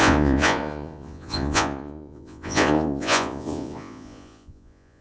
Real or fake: fake